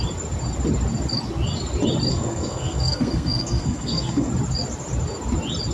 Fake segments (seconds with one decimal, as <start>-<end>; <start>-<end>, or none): 2.1-4.3